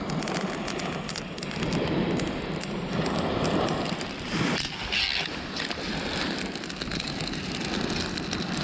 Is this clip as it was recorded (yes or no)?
yes